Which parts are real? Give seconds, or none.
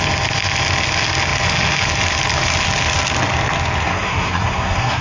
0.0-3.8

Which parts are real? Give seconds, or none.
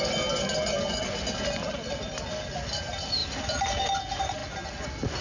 0.0-5.2